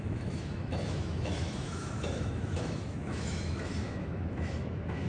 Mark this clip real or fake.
fake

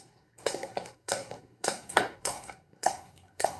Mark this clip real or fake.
fake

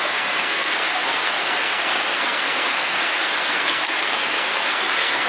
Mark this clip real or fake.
fake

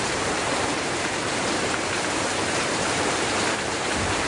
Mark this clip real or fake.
fake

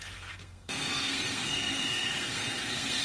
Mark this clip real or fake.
fake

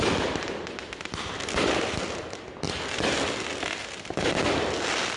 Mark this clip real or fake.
real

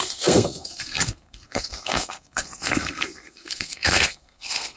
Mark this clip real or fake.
fake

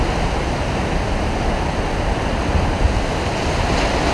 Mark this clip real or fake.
real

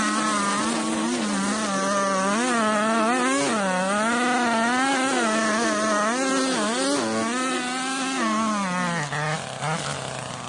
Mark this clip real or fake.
real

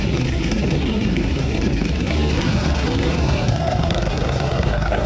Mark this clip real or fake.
fake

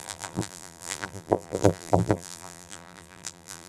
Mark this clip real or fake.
fake